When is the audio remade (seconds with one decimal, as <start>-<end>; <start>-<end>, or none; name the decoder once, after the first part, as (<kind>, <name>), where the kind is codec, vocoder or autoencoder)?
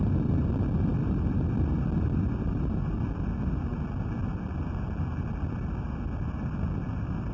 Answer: none